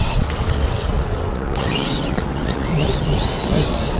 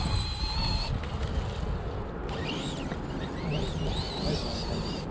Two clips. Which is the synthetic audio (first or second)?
first